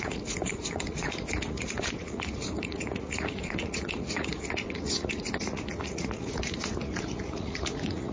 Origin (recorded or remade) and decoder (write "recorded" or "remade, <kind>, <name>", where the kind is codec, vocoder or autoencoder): remade, vocoder, Vocos